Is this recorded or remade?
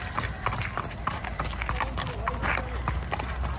recorded